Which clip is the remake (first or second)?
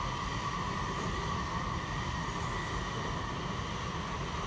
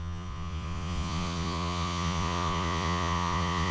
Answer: second